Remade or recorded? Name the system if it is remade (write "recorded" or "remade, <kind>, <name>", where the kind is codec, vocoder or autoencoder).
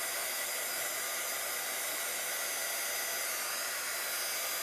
recorded